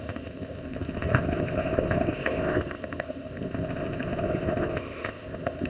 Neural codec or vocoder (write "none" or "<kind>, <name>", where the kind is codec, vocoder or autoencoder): codec, ZipCodec